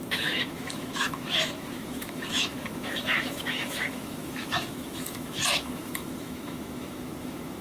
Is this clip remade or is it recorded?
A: remade